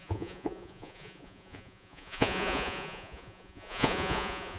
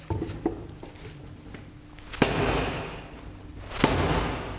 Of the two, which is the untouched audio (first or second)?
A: second